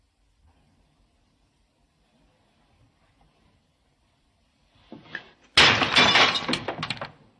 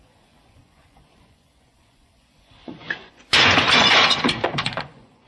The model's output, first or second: second